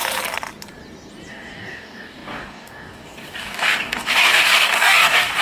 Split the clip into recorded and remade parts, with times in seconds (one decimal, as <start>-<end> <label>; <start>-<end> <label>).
0.0-1.3 recorded; 1.3-5.4 remade

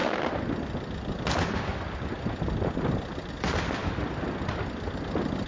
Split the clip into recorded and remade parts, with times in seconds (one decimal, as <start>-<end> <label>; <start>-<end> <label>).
0.0-5.5 recorded

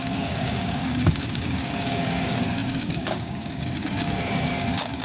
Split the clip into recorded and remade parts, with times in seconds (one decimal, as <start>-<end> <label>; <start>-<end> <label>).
0.0-5.0 remade

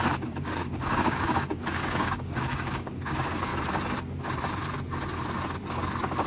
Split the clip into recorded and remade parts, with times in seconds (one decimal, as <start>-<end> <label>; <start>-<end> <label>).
0.0-3.5 remade; 3.5-6.3 recorded

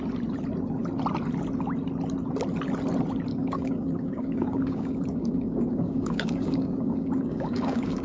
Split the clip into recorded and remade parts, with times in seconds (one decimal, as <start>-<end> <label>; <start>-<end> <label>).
0.0-3.3 recorded; 3.3-8.0 remade

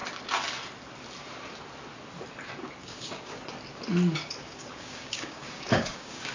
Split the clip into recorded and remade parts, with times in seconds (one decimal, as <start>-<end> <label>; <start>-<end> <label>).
0.0-2.8 recorded; 2.8-3.4 remade; 3.4-4.4 recorded; 4.4-6.3 remade